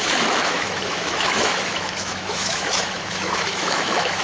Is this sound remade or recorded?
remade